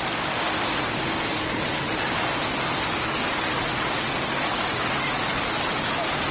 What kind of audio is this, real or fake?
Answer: real